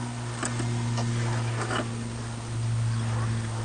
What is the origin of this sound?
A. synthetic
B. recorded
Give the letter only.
B